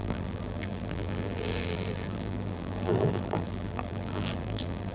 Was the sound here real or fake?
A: fake